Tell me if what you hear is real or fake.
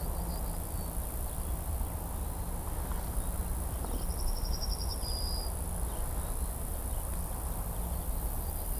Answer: real